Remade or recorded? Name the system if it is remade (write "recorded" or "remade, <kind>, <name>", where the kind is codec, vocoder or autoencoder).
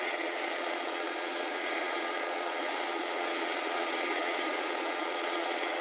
remade, vocoder, Vocos